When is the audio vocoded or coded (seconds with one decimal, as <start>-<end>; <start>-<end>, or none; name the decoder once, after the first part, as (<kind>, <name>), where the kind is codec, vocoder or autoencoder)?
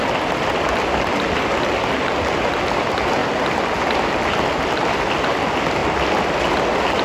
none